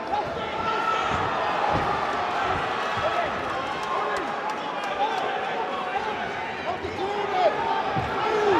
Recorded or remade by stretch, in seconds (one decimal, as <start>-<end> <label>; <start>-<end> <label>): 0.0-8.6 recorded